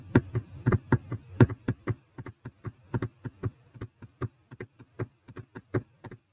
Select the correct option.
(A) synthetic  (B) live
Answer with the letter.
B